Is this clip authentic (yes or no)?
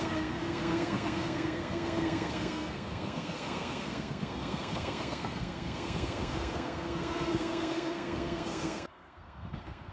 no